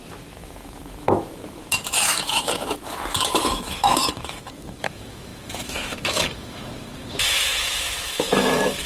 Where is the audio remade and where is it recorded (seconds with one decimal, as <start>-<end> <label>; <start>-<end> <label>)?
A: 0.0-8.9 remade